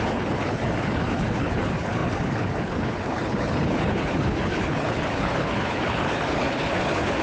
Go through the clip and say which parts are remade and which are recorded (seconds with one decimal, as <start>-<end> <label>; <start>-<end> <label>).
0.0-7.2 remade